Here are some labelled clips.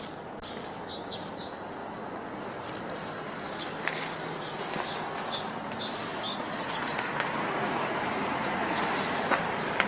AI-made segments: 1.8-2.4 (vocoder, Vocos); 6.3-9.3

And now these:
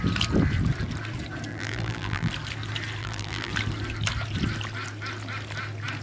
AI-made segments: 1.5-2.3 (vocoder, BigVGAN v2); 3.0-3.5

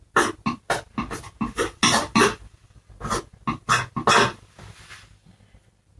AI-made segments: none

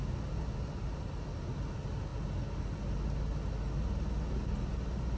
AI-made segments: none